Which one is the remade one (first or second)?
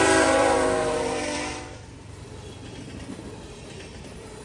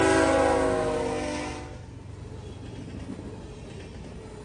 first